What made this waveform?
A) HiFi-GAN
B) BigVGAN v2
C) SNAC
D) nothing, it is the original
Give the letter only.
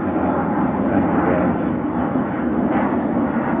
D